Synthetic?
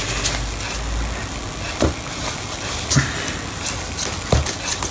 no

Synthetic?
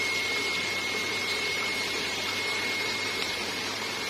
yes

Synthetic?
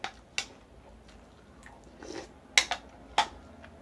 no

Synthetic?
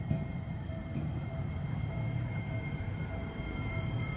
yes